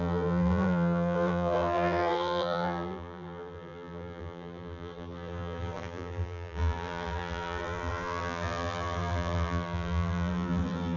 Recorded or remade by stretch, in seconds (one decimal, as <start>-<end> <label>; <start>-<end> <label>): 0.0-11.0 remade